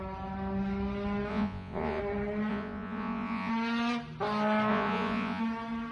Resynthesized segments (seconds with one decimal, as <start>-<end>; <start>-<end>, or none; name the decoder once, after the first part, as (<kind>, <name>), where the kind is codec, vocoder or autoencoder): 1.3-2.0 (vocoder, Vocos); 2.5-3.5; 4.7-5.4